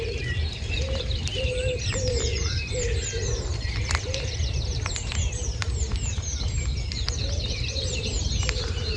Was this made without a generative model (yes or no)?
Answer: no